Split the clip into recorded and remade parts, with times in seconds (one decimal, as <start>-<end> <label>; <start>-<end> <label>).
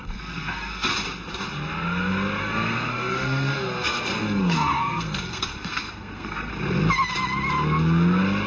0.0-0.9 remade; 0.9-2.4 recorded; 2.4-6.5 remade; 6.5-8.5 recorded